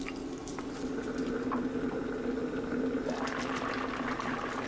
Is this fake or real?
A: real